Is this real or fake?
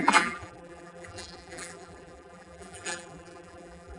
fake